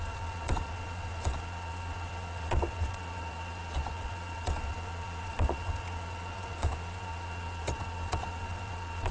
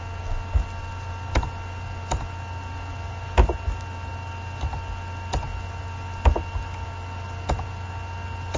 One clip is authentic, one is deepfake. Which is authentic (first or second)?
second